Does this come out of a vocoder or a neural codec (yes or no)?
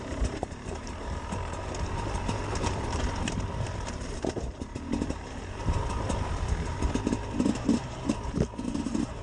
yes